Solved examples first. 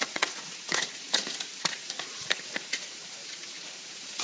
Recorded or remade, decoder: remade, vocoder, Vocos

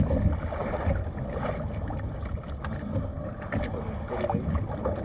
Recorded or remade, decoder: recorded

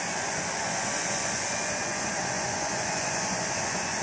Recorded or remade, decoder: remade, vocoder, Vocos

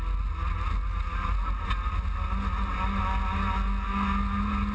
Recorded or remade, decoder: recorded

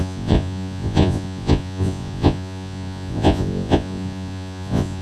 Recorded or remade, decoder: remade, vocoder, Vocos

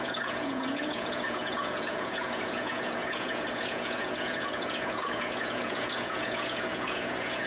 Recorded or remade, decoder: remade, vocoder, Vocos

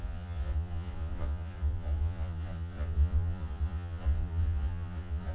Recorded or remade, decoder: remade, vocoder, Vocos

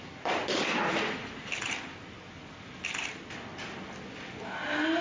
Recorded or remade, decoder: recorded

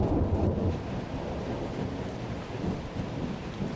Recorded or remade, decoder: recorded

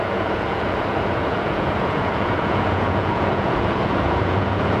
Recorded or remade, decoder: remade, vocoder, Vocos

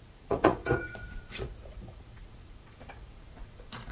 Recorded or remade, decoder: remade, vocoder, Vocos